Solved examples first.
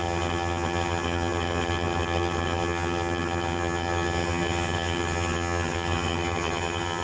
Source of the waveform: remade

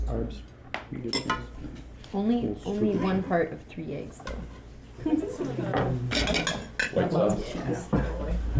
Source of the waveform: recorded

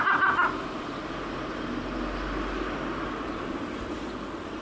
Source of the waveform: recorded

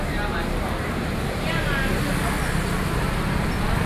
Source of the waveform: recorded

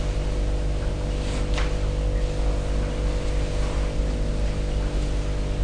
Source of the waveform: recorded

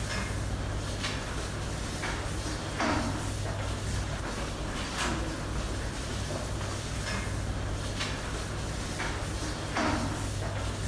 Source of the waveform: recorded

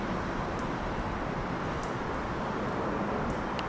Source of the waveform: recorded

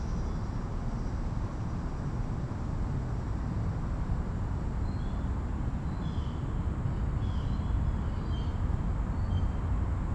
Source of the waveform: recorded